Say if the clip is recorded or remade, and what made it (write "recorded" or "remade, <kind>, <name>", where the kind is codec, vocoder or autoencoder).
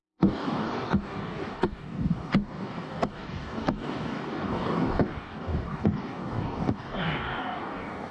remade, codec, DAC